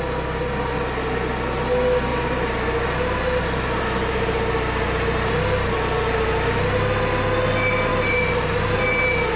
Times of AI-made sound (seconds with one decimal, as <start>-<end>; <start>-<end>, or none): 2.1-5.3; 7.9-8.8